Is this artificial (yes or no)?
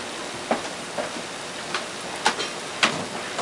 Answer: no